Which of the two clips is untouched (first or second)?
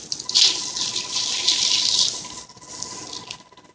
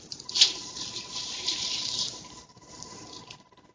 first